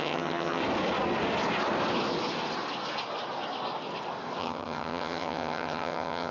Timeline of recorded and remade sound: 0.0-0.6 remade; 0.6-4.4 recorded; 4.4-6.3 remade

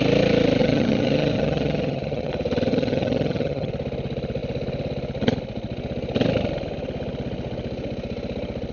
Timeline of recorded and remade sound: 0.0-0.6 recorded; 0.6-2.3 remade; 2.3-2.7 recorded; 2.7-3.7 remade; 3.7-8.7 recorded

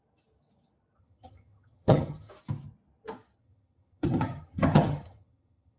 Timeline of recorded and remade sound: 0.0-1.0 recorded; 1.0-2.3 remade; 2.3-3.4 recorded; 3.4-5.8 remade

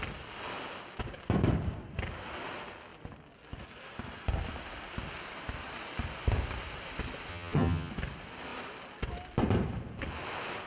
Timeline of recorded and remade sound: 0.0-7.3 recorded; 7.3-7.9 remade; 7.9-10.7 recorded

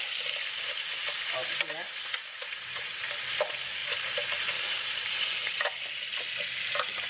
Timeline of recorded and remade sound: 0.0-7.1 recorded

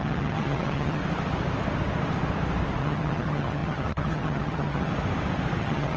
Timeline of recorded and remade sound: 0.0-1.0 remade; 1.0-2.8 recorded; 2.8-4.9 remade; 4.9-5.6 recorded; 5.6-6.0 remade

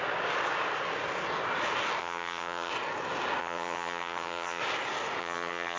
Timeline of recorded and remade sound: 0.0-2.0 recorded; 2.0-2.7 remade; 2.7-3.4 recorded; 3.4-4.6 remade; 4.6-5.2 recorded; 5.2-5.8 remade

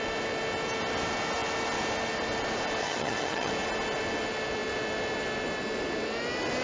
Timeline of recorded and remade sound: 0.0-2.8 recorded; 2.8-3.5 remade; 3.5-6.6 recorded